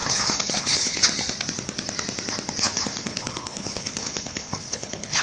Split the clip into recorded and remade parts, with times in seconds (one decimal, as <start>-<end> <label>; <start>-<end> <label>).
0.0-1.0 remade; 1.0-2.6 recorded; 2.6-5.2 remade